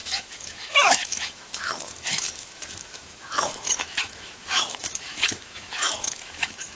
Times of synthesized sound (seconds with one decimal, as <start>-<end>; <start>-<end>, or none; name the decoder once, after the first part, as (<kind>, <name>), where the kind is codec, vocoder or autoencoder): 0.0-6.7 (autoencoder, DAC-VAE)